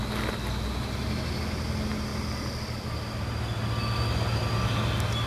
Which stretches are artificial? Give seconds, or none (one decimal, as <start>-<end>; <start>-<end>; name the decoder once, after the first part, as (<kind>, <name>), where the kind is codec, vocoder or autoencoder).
none